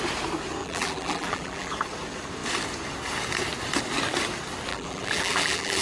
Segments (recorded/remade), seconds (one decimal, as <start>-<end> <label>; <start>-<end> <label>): 0.0-0.6 recorded; 0.6-1.7 remade; 1.7-4.7 recorded; 4.7-5.8 remade